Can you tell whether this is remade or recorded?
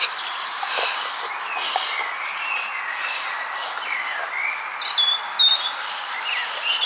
recorded